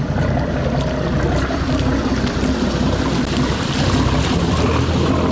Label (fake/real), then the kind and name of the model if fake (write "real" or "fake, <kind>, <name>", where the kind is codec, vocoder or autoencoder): real